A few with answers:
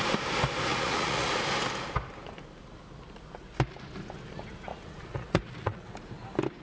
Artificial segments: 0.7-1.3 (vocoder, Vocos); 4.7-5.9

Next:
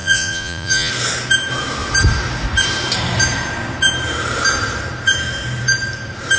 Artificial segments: 0.0-0.9 (vocoder, Vocos)

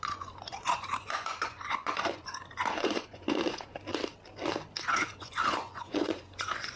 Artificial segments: 0.0-3.7 (vocoder, Vocos); 4.8-6.8

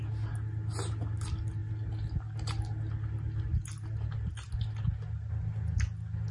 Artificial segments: none

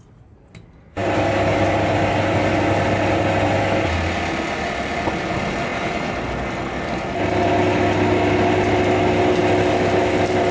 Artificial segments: none